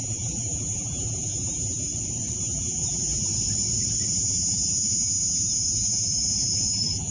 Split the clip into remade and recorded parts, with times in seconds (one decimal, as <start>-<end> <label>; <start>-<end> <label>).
0.0-1.9 remade; 1.9-2.4 recorded; 2.4-3.3 remade; 3.3-4.1 recorded; 4.1-7.1 remade